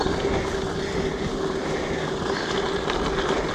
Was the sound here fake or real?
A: real